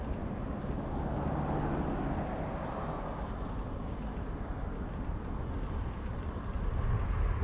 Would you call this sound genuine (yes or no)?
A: yes